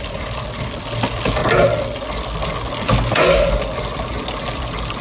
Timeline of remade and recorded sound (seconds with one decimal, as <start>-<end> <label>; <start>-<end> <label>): 0.0-1.4 remade; 1.4-4.4 recorded; 4.4-5.0 remade